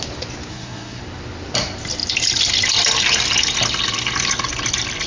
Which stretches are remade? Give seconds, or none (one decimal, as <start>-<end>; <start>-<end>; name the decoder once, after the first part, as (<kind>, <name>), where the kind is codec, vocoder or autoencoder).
0.5-1.0 (codec, SNAC)